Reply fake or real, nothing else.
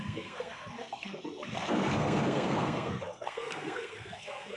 fake